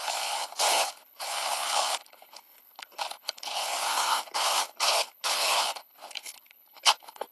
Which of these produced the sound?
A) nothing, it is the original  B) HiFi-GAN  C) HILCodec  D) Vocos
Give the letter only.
C